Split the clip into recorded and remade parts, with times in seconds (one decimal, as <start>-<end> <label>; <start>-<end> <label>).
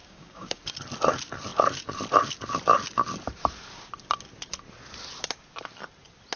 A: 0.0-0.6 remade; 0.6-6.4 recorded